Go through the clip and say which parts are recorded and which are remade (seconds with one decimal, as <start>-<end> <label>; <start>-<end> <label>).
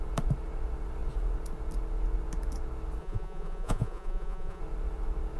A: 0.0-3.0 recorded; 3.0-4.6 remade; 4.6-5.4 recorded